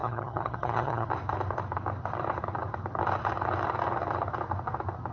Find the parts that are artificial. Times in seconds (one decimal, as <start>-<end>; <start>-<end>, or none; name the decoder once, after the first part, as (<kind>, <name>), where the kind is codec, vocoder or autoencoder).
0.0-1.1 (vocoder, HiFi-GAN)